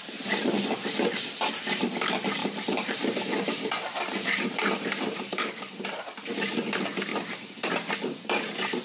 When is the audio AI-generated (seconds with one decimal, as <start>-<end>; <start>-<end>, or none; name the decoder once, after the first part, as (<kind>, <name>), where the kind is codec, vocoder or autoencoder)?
2.4-6.0 (vocoder, BigVGAN v2); 7.1-7.7